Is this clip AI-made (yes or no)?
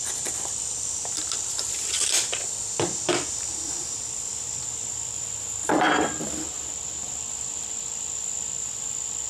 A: yes